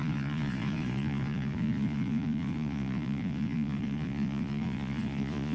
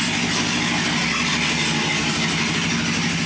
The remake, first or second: first